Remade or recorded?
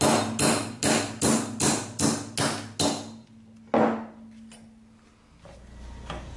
recorded